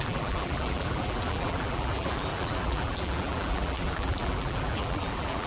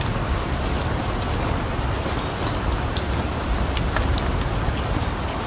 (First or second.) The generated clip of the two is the first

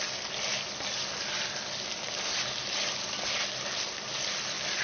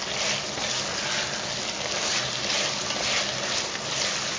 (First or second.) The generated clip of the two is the first